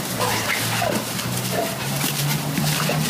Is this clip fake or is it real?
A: real